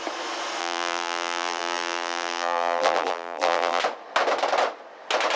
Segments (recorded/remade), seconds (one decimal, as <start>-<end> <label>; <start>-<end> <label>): 0.0-0.6 recorded; 0.6-3.8 remade; 3.8-5.4 recorded